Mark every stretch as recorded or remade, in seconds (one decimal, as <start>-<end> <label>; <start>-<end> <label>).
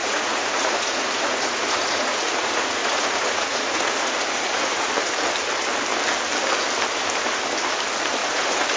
0.0-4.9 remade; 4.9-8.2 recorded; 8.2-8.8 remade